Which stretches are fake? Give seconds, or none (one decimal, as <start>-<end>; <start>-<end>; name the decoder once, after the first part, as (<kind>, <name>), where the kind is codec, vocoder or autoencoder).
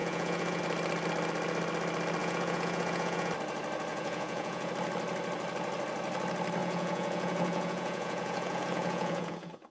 0.0-0.6 (vocoder, Vocos); 2.2-3.3; 3.9-4.7; 6.6-9.7